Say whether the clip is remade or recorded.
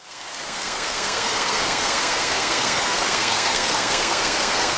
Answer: remade